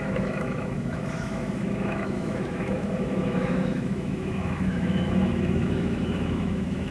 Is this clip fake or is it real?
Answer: fake